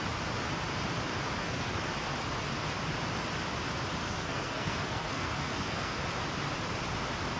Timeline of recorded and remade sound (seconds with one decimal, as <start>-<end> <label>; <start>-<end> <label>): 0.0-1.4 recorded; 1.4-1.9 remade; 1.9-4.0 recorded; 4.0-6.0 remade; 6.0-7.4 recorded

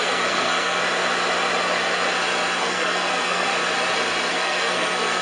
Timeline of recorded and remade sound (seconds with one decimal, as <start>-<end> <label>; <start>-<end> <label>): 0.0-0.8 remade; 0.8-2.6 recorded; 2.6-3.5 remade; 3.5-4.3 recorded; 4.3-5.2 remade

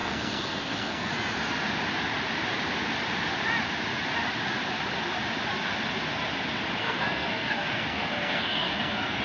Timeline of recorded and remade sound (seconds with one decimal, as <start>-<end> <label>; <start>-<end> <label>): 0.0-1.1 remade; 1.1-6.8 recorded; 6.8-9.2 remade

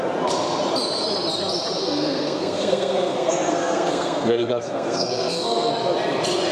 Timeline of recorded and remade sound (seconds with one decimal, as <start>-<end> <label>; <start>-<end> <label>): 0.0-1.8 recorded; 1.8-5.7 remade; 5.7-6.5 recorded

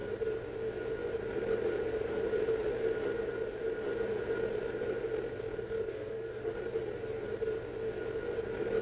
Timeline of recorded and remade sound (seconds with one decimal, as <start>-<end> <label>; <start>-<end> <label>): 0.0-5.8 recorded; 5.8-6.5 remade; 6.5-8.8 recorded

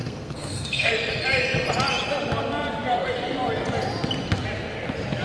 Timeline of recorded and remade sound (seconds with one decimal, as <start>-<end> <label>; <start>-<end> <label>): 0.0-0.9 remade; 0.9-5.2 recorded

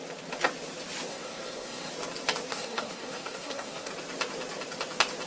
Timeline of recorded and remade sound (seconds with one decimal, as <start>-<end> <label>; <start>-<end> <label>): 0.0-1.1 recorded; 1.1-1.9 remade; 1.9-2.5 recorded; 2.5-3.9 remade; 3.9-5.3 recorded